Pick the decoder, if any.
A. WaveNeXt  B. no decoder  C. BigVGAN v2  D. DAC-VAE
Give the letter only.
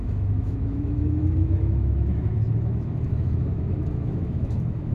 D